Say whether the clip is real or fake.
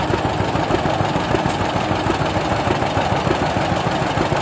real